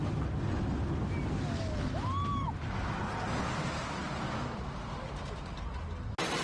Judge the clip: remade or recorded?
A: recorded